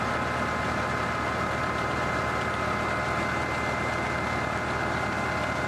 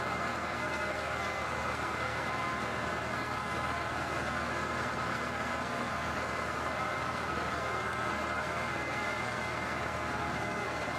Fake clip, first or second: second